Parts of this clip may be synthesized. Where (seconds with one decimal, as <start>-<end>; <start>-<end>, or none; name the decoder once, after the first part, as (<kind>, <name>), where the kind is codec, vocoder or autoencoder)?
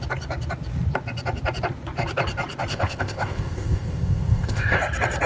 2.7-4.8 (codec, ZipCodec)